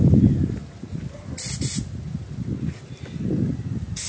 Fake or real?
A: real